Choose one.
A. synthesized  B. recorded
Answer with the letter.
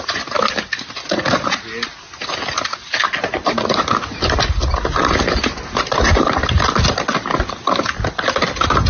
B